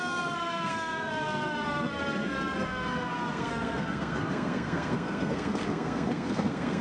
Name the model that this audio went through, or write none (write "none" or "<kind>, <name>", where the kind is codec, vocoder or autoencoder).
codec, SNAC